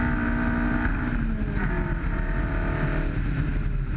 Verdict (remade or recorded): recorded